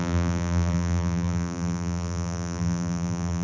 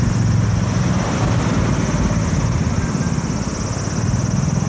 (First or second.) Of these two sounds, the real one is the second